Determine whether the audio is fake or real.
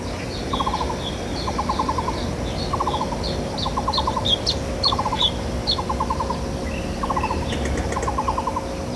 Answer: real